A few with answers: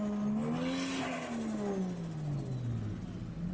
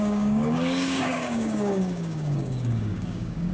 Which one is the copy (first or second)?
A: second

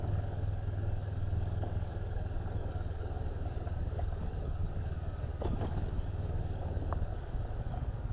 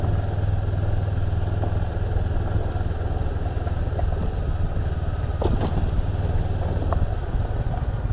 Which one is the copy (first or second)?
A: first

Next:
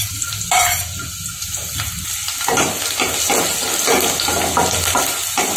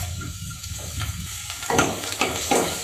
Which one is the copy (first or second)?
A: second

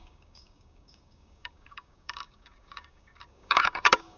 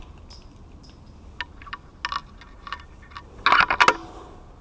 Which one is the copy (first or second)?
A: first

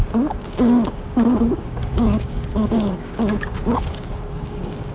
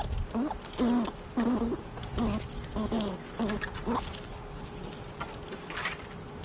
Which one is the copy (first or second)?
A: first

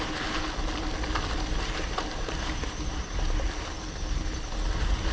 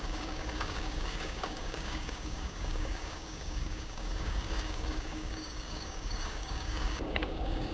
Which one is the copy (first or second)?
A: second